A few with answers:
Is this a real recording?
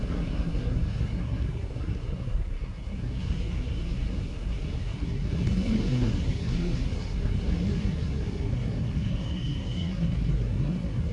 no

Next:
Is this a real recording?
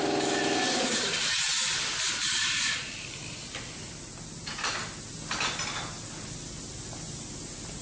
yes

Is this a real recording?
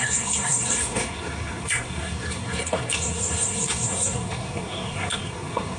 no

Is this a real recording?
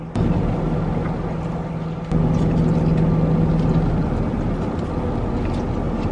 yes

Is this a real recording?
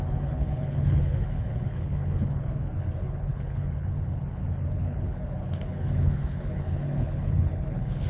no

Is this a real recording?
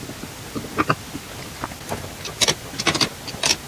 yes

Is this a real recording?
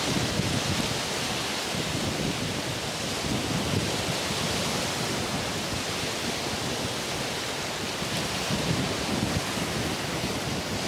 yes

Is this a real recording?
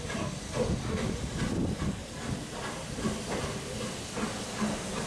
yes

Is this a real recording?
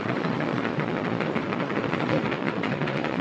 no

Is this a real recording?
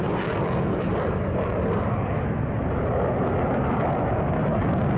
yes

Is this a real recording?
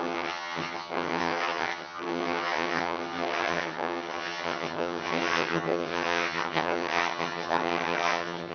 no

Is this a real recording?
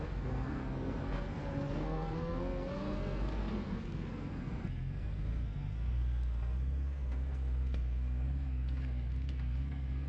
no